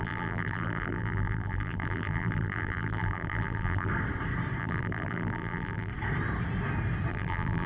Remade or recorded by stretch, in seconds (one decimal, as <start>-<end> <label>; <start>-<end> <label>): 0.0-3.9 remade; 3.9-4.6 recorded; 4.6-5.9 remade; 5.9-7.1 recorded; 7.1-7.7 remade